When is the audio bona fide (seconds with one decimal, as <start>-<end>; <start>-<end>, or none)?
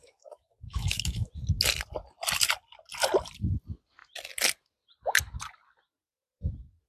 1.3-6.9